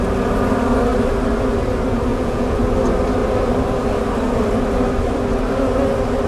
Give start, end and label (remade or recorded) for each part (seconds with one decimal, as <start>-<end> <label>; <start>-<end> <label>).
0.0-2.1 recorded; 2.1-2.6 remade; 2.6-6.3 recorded